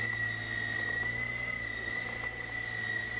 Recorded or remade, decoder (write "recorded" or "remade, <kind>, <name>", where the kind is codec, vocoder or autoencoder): recorded